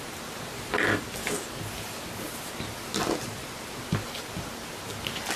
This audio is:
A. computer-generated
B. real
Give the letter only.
B